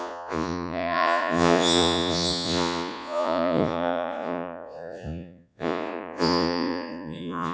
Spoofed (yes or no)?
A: yes